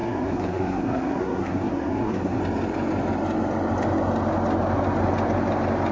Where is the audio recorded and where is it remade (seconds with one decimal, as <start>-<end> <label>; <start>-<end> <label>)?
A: 0.0-2.4 remade; 2.4-5.9 recorded